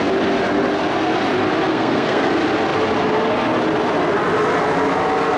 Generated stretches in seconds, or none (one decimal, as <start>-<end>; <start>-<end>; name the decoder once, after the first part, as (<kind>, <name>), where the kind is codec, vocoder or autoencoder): 1.7-2.3 (codec, SNAC)